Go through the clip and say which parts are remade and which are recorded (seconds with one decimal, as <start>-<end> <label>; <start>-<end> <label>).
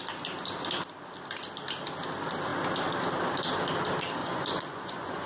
0.0-4.2 recorded; 4.2-5.3 remade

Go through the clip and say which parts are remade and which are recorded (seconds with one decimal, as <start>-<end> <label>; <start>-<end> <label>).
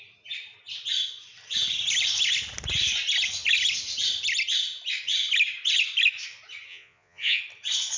0.0-6.7 recorded; 6.7-7.4 remade; 7.4-8.0 recorded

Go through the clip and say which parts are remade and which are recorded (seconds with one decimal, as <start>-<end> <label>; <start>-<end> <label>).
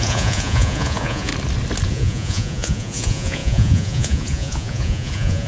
0.0-1.3 remade; 1.3-1.9 recorded; 1.9-5.5 remade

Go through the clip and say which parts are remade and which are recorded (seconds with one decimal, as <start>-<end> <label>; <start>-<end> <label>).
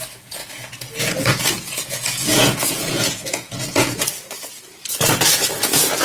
0.0-0.4 recorded; 0.4-4.0 remade; 4.0-6.0 recorded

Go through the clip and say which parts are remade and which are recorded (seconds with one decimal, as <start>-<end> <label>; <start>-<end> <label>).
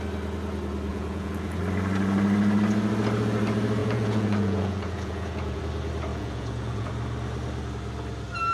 0.0-0.9 recorded; 0.9-1.6 remade; 1.6-3.8 recorded; 3.8-5.6 remade; 5.6-6.1 recorded; 6.1-6.9 remade; 6.9-8.5 recorded